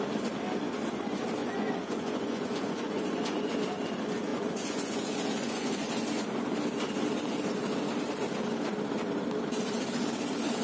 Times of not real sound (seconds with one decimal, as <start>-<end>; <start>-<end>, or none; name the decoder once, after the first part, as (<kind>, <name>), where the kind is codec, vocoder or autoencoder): 1.4-3.6 (vocoder, Vocos); 4.3-5.9